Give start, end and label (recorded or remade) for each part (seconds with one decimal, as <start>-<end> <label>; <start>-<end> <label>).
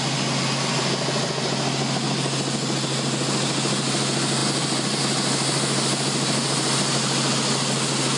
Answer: 0.0-8.2 recorded